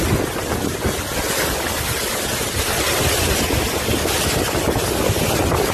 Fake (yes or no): no